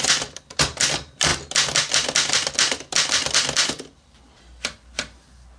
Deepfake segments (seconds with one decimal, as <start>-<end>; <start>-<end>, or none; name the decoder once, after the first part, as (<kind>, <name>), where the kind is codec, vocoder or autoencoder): 0.0-1.3 (vocoder, BigVGAN v2); 3.1-5.6